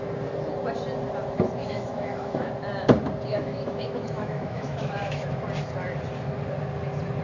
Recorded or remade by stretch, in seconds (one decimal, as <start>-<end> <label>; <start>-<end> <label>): 0.0-1.6 recorded; 1.6-2.5 remade; 2.5-3.3 recorded; 3.3-5.4 remade; 5.4-7.2 recorded